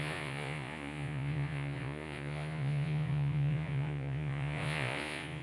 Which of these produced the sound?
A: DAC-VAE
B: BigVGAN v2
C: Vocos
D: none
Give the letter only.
C